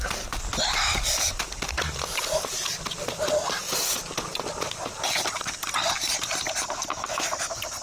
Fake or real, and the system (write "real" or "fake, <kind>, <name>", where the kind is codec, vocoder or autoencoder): fake, vocoder, BigVGAN v2